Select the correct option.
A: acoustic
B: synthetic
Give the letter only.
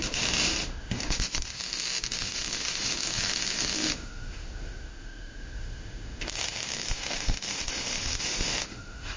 B